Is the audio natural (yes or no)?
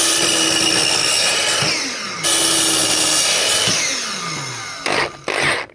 yes